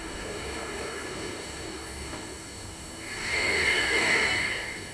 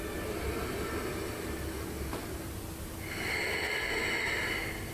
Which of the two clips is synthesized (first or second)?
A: first